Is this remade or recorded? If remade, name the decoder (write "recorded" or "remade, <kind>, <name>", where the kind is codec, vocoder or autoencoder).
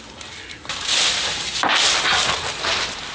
recorded